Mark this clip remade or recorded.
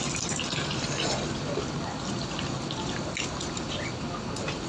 recorded